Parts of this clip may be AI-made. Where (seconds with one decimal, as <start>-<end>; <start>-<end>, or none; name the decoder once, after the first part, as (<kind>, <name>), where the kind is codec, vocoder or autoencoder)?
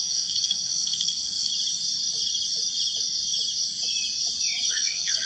0.0-1.5 (codec, SNAC); 4.7-5.3